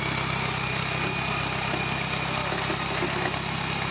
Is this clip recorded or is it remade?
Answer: recorded